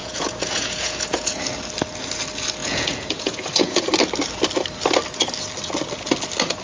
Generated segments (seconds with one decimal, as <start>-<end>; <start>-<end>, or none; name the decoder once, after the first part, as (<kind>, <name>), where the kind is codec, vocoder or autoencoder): 0.0-1.4 (vocoder, Vocos); 2.6-3.8